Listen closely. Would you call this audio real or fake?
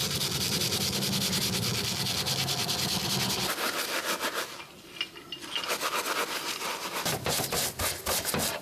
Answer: real